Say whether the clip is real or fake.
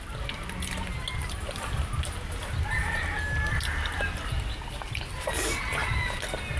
real